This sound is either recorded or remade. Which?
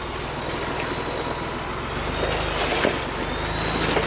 recorded